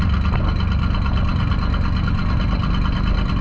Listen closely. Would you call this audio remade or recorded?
recorded